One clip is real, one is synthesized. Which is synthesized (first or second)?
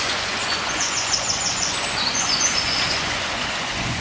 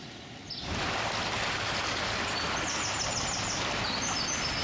first